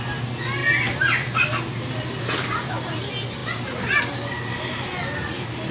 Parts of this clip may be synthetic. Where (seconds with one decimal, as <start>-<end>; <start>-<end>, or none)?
none

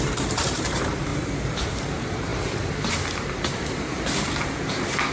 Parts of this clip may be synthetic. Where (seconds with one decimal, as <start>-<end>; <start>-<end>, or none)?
0.0-5.1